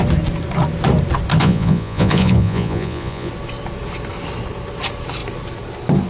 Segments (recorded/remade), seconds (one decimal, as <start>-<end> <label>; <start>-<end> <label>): 0.0-1.4 recorded; 1.4-3.3 remade; 3.3-6.1 recorded